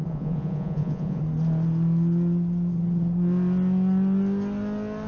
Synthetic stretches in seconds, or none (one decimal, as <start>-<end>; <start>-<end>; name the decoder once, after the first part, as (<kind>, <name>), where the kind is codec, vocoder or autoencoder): 0.0-1.2 (vocoder, Vocos)